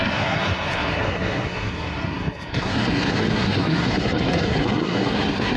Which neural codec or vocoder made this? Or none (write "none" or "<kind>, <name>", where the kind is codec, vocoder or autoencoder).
codec, SNAC